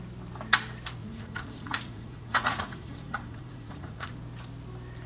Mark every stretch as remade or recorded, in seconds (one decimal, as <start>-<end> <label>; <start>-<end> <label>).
0.0-1.0 recorded; 1.0-4.1 remade; 4.1-5.1 recorded